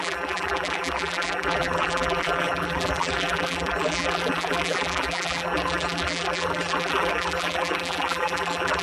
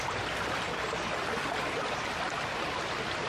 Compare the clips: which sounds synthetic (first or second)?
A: first